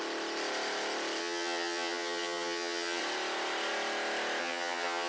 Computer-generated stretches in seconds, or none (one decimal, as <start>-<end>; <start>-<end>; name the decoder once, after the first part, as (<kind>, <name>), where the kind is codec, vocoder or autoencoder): 1.2-3.0 (vocoder, HiFi-GAN); 4.4-5.1

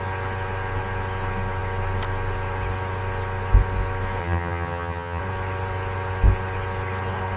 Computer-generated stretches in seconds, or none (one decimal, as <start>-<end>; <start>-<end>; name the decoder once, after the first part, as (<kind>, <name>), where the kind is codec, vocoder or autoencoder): 4.2-5.2 (vocoder, HiFi-GAN)

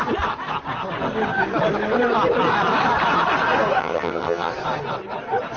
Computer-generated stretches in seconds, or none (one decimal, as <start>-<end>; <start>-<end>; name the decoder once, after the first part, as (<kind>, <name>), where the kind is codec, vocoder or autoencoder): 3.8-4.5 (vocoder, HiFi-GAN)